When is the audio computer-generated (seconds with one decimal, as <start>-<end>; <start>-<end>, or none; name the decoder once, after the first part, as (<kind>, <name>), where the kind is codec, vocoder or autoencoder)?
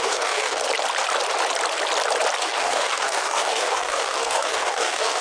0.0-0.6 (codec, DAC); 2.4-5.2